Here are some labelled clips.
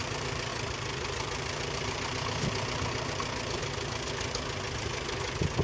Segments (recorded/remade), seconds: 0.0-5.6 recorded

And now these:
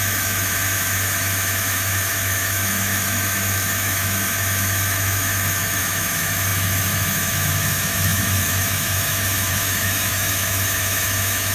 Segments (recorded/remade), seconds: 0.0-11.5 remade

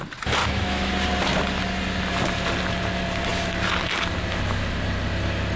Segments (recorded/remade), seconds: 0.0-0.4 recorded; 0.4-0.9 remade; 0.9-5.6 recorded